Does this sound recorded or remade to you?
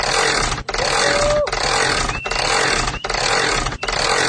recorded